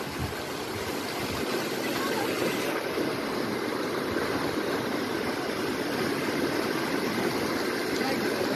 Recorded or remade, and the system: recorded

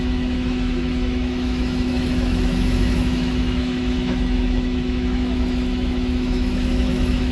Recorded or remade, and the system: remade, autoencoder, DAC-VAE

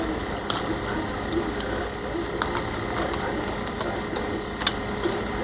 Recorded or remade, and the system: recorded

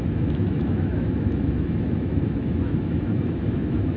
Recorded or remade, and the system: remade, autoencoder, DAC-VAE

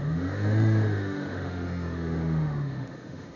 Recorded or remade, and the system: remade, autoencoder, DAC-VAE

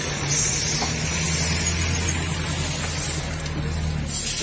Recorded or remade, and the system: recorded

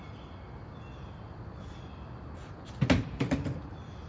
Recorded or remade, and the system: recorded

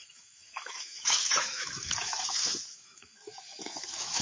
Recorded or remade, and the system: remade, autoencoder, DAC-VAE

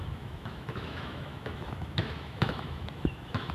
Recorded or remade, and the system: remade, autoencoder, DAC-VAE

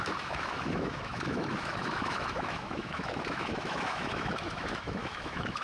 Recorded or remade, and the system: remade, autoencoder, DAC-VAE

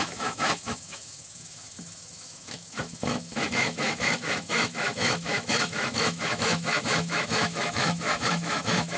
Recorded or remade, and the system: remade, autoencoder, DAC-VAE